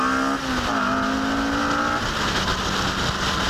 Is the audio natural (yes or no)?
yes